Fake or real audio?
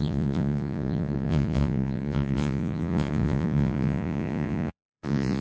fake